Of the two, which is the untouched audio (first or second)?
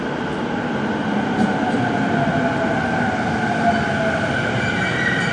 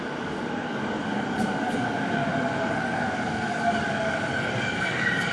first